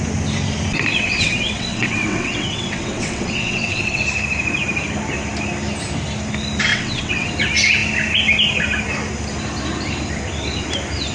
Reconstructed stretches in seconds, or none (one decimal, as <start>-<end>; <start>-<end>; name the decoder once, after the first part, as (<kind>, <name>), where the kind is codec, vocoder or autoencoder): 0.9-4.0 (vocoder, WaveNeXt); 6.7-7.3